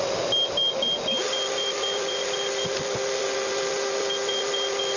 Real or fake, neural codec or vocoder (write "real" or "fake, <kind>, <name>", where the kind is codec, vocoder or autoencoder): real